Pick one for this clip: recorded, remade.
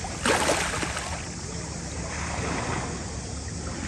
recorded